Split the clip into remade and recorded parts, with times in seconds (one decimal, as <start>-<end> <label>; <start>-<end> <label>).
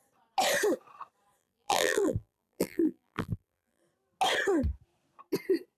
0.0-1.4 recorded; 1.4-3.8 remade; 3.8-5.8 recorded